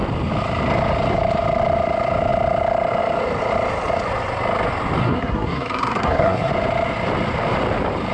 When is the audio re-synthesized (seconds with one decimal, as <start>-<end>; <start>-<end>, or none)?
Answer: 5.0-6.5